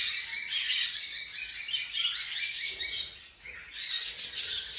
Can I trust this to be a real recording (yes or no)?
yes